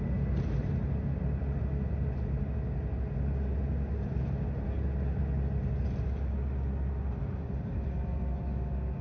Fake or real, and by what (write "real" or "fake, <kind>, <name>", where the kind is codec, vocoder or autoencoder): real